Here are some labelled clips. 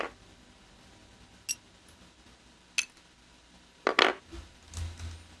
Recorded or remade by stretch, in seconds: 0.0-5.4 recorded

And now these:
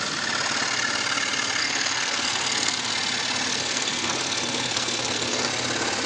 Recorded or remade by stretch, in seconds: 0.0-1.6 recorded; 1.6-2.9 remade; 2.9-3.5 recorded; 3.5-5.5 remade; 5.5-6.1 recorded

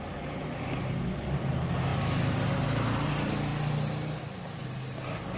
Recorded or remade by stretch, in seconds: 0.0-5.4 recorded